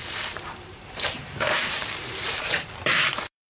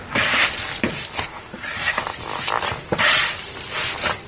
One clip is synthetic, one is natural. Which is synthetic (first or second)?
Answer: first